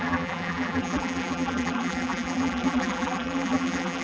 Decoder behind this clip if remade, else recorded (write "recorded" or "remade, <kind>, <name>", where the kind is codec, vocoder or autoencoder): remade, vocoder, BigVGAN v2